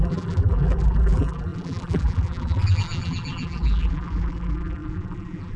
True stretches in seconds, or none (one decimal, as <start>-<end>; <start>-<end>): none